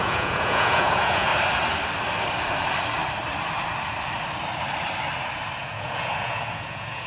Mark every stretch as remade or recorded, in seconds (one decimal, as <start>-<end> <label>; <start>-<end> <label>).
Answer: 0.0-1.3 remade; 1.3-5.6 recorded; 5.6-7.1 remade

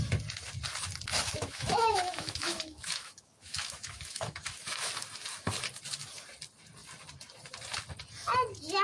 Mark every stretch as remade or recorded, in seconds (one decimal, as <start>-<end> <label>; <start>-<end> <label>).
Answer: 0.0-1.1 recorded; 1.1-4.9 remade; 4.9-8.8 recorded

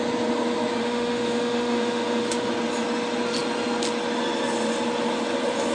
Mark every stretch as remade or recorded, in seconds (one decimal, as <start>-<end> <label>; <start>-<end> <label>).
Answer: 0.0-0.8 recorded; 0.8-2.5 remade; 2.5-5.7 recorded

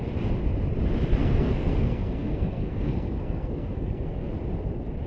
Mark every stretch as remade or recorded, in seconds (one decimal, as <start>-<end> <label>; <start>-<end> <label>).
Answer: 0.0-1.2 recorded; 1.2-4.3 remade; 4.3-5.1 recorded